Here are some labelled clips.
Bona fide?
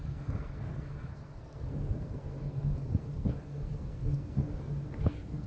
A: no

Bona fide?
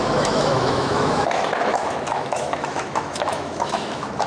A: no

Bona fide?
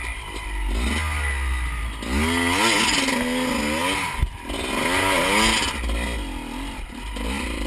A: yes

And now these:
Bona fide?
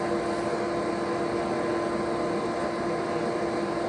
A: yes